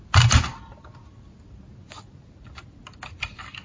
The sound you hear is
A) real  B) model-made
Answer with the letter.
A